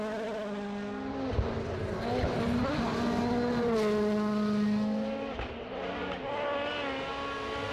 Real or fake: real